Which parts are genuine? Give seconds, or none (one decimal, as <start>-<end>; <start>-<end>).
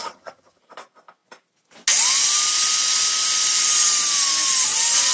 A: 0.6-5.1